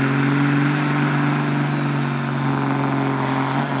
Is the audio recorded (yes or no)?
yes